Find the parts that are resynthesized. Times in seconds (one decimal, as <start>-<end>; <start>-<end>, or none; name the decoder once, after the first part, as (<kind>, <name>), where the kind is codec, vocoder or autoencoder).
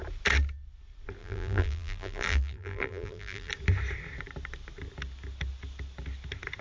1.2-3.5 (vocoder, BigVGAN v2)